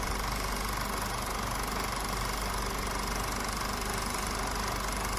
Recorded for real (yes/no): yes